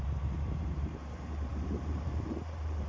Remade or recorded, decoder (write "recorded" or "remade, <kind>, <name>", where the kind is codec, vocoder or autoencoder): remade, vocoder, BigVGAN v2